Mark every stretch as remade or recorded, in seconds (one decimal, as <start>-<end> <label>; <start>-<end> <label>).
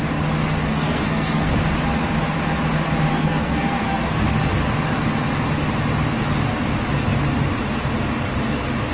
0.0-0.7 recorded; 0.7-1.5 remade; 1.5-3.1 recorded; 3.1-4.2 remade; 4.2-8.9 recorded